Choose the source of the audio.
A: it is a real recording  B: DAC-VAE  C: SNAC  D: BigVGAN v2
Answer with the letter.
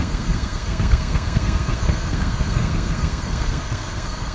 C